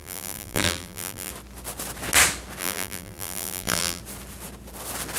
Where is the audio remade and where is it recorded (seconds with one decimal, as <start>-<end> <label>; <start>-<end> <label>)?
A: 0.0-1.3 remade; 1.3-2.6 recorded; 2.6-4.0 remade; 4.0-5.2 recorded